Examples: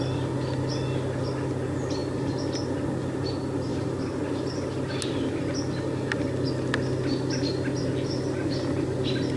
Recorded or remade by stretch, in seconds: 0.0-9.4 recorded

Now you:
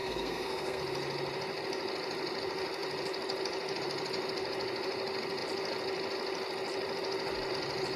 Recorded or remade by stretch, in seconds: 0.0-0.8 remade; 0.8-8.0 recorded

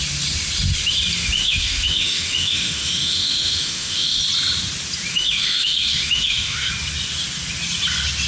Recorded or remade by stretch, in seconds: 0.0-1.4 recorded; 1.4-4.2 remade; 4.2-5.1 recorded; 5.1-6.7 remade; 6.7-8.3 recorded

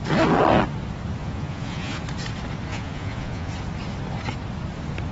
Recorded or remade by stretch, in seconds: 0.0-1.2 recorded; 1.2-2.0 remade; 2.0-2.7 recorded; 2.7-3.5 remade; 3.5-5.1 recorded

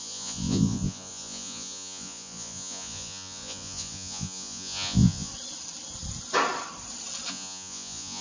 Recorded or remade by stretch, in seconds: 0.0-5.3 remade; 5.3-7.3 recorded; 7.3-8.2 remade

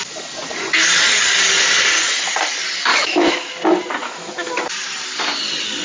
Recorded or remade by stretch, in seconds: 0.0-2.9 recorded; 2.9-3.5 remade; 3.5-4.0 recorded; 4.0-4.5 remade; 4.5-5.8 recorded

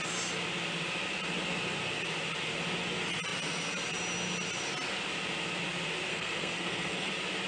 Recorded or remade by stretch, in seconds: 0.0-6.1 recorded; 6.1-7.1 remade; 7.1-7.5 recorded

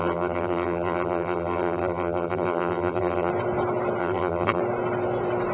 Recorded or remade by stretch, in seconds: 0.0-3.3 remade; 3.3-4.0 recorded; 4.0-4.6 remade; 4.6-5.5 recorded